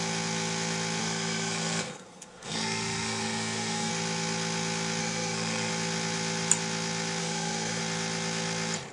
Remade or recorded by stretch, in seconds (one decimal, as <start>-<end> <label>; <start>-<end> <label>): 0.0-1.0 recorded; 1.0-3.9 remade; 3.9-5.0 recorded; 5.0-5.7 remade; 5.7-7.2 recorded; 7.2-7.8 remade; 7.8-8.9 recorded